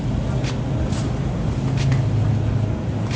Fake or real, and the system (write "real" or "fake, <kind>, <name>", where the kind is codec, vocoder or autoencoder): real